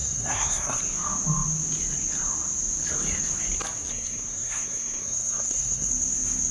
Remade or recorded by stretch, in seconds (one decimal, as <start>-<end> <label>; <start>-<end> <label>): 0.0-0.8 remade; 0.8-3.9 recorded; 3.9-5.9 remade; 5.9-6.5 recorded